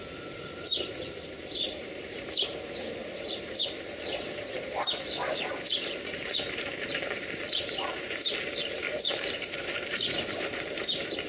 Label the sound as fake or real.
fake